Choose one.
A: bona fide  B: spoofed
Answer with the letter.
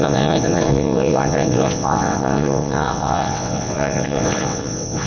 B